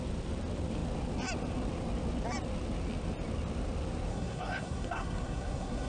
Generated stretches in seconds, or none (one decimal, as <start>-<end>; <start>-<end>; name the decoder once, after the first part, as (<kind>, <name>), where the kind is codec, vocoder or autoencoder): 4.1-5.9 (codec, SNAC)